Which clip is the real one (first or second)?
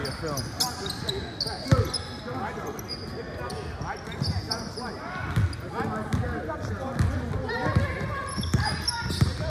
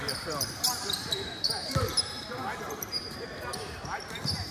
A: first